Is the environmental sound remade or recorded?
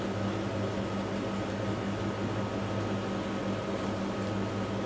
recorded